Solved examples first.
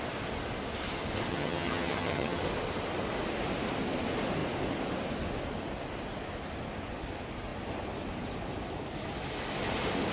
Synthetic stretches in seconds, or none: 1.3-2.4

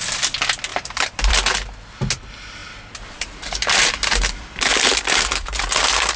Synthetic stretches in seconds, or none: 0.7-1.3; 2.6-5.8

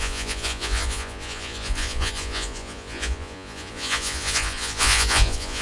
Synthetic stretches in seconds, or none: 0.0-5.6